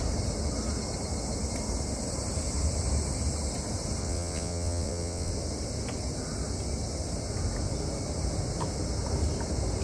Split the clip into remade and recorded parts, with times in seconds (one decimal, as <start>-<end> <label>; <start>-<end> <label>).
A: 0.0-4.0 recorded; 4.0-5.3 remade; 5.3-9.8 recorded